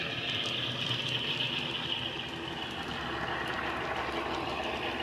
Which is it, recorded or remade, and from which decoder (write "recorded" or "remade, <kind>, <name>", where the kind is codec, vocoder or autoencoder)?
recorded